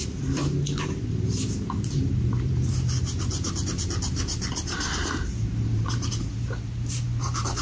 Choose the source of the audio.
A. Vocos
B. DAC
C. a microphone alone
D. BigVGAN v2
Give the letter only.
D